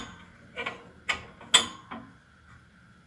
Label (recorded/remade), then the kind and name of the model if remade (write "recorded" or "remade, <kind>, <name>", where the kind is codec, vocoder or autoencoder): recorded